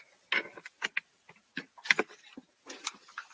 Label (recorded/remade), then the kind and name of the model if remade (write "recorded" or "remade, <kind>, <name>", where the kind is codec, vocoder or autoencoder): recorded